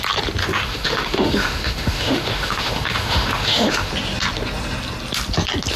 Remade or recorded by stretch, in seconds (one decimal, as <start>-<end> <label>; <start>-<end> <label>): 0.0-0.4 recorded; 0.4-3.9 remade; 3.9-5.8 recorded